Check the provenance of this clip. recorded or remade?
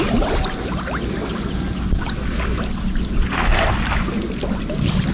recorded